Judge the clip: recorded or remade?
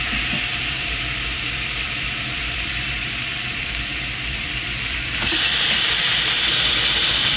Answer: remade